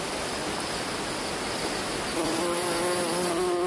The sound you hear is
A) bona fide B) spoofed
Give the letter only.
A